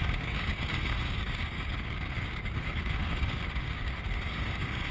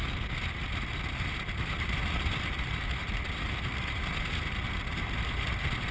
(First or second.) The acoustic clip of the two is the second